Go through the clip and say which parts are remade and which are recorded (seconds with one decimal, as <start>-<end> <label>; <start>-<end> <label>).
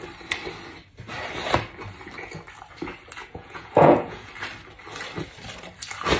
0.0-3.2 recorded; 3.2-4.3 remade; 4.3-6.2 recorded